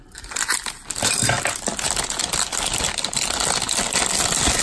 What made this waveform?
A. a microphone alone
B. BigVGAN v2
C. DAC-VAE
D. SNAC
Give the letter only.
A